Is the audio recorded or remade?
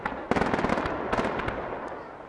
recorded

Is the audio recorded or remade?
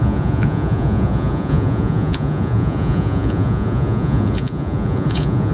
remade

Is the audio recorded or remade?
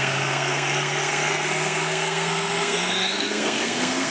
remade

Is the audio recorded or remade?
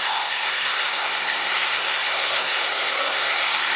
remade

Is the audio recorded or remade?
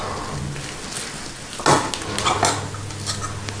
recorded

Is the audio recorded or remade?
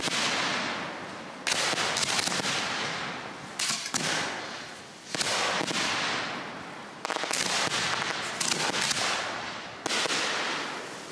recorded